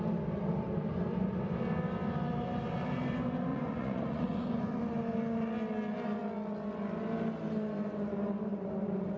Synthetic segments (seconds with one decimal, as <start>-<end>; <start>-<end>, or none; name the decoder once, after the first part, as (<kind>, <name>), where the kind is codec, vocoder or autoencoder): 3.5-4.8 (vocoder, Vocos)